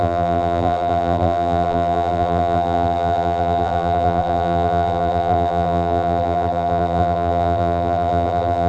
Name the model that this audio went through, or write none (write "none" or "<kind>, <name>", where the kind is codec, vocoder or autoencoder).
vocoder, BigVGAN v2